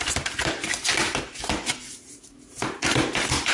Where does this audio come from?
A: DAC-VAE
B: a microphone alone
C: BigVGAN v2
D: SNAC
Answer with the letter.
C